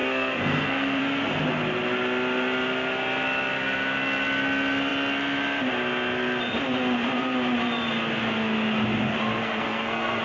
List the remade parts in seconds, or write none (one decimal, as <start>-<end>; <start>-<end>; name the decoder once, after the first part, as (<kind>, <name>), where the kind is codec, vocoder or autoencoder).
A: 0.0-1.0 (codec, SNAC); 9.4-10.2